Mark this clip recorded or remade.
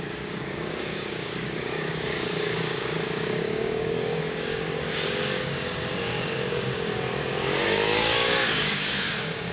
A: remade